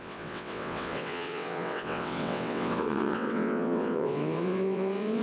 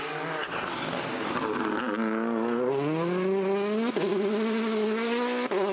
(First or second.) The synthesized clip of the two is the first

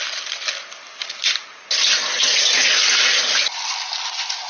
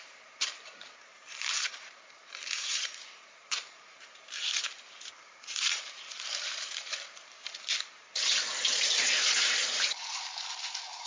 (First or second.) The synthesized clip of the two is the second